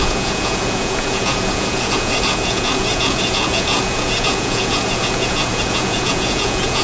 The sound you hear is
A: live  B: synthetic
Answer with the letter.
B